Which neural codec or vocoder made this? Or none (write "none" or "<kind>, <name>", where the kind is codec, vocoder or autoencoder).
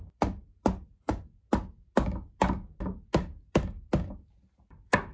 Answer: none